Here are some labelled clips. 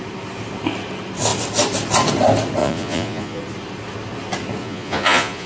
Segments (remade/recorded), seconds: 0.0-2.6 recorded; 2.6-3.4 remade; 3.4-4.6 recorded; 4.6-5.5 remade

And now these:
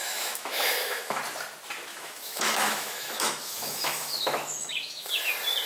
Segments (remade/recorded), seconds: 0.0-1.2 remade; 1.2-1.9 recorded; 1.9-5.3 remade; 5.3-5.7 recorded

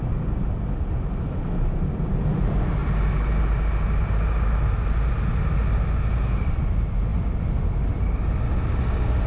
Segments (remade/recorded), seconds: 0.0-9.3 recorded

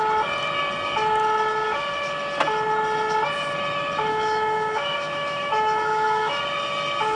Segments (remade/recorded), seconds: 0.0-4.1 recorded; 4.1-6.4 remade; 6.4-7.2 recorded

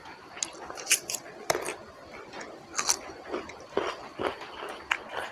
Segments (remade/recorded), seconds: 0.0-5.3 recorded